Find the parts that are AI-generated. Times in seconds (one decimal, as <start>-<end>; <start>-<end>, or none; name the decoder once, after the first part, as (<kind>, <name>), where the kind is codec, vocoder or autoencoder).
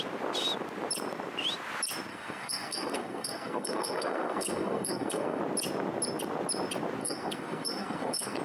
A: 2.1-5.4 (codec, SNAC); 7.0-8.4